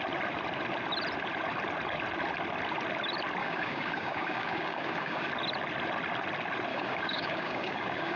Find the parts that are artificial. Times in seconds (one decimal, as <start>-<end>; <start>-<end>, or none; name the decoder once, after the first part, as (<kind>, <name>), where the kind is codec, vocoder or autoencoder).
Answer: 3.4-5.3 (codec, DAC); 6.7-8.2